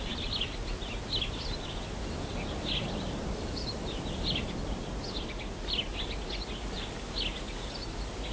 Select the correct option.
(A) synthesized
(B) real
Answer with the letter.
B